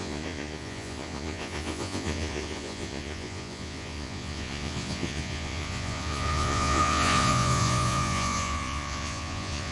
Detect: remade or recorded remade